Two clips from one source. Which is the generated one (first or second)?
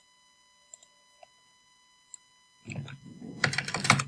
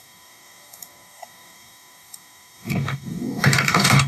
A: second